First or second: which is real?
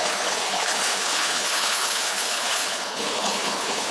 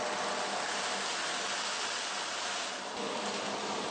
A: second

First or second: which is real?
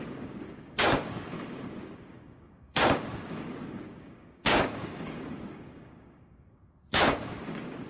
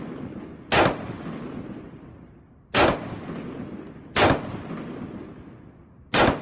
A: second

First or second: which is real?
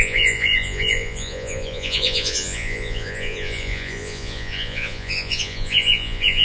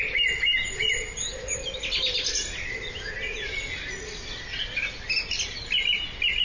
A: second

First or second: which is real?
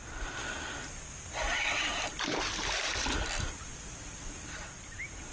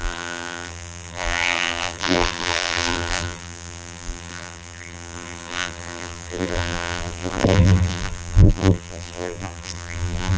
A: first